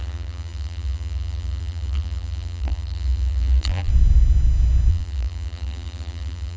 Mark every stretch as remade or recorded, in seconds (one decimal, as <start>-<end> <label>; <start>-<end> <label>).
0.0-3.9 remade; 3.9-4.9 recorded; 4.9-6.6 remade